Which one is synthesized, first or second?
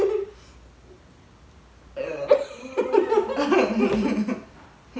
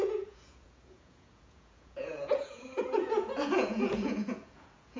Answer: second